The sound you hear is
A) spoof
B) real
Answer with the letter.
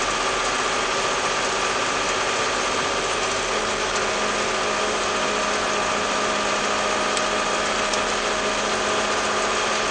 B